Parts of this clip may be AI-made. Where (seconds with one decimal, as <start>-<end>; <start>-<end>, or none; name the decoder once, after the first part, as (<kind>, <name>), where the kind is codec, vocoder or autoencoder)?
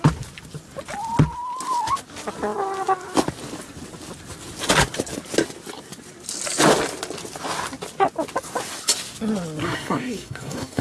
9.6-10.8 (codec, SNAC)